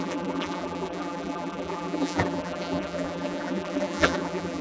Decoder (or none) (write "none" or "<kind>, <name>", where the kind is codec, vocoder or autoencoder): vocoder, BigVGAN v2